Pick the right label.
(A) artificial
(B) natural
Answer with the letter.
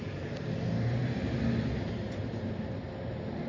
B